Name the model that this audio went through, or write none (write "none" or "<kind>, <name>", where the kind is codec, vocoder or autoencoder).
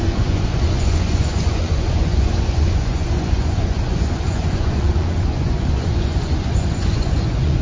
vocoder, Vocos